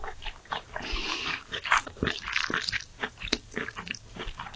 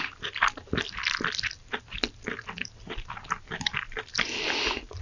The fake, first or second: first